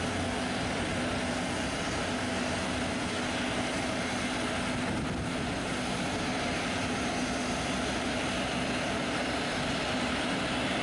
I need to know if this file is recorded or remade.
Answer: recorded